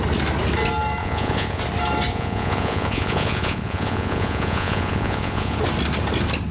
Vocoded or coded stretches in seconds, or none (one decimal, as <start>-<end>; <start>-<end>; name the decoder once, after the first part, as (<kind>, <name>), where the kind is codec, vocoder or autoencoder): 1.0-1.6 (vocoder, Vocos); 2.1-5.6

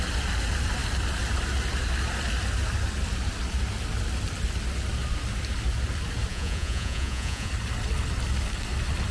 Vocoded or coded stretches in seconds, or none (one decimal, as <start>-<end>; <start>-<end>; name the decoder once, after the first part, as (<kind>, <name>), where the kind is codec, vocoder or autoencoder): 6.3-7.5 (vocoder, Vocos)

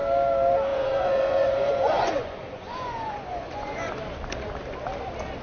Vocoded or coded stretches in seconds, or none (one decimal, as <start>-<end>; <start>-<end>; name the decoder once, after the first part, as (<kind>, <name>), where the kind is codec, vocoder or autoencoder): 0.7-3.9 (vocoder, Vocos)

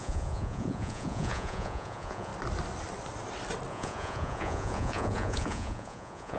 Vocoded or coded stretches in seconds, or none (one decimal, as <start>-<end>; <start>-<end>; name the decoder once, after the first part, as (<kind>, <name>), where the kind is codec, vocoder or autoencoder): 0.0-2.3 (vocoder, Vocos); 3.7-6.4

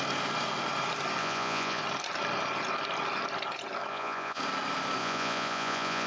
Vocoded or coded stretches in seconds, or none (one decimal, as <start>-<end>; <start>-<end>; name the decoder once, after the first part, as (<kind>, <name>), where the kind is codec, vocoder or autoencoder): 1.2-1.8 (vocoder, Vocos); 3.9-4.4; 5.0-6.1

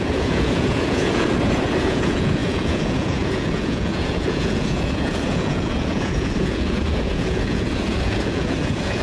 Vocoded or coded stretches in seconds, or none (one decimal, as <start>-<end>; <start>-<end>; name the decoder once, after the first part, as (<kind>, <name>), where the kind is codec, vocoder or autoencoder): 0.0-9.0 (vocoder, Vocos)

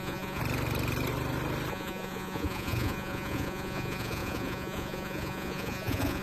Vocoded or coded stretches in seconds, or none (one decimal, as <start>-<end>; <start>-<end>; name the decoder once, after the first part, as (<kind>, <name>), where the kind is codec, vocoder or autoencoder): 0.0-0.4 (vocoder, Vocos); 1.7-6.2

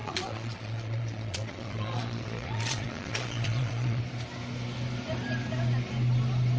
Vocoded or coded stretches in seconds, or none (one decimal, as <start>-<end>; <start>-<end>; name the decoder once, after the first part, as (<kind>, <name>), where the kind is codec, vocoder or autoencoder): 0.0-4.0 (vocoder, Vocos)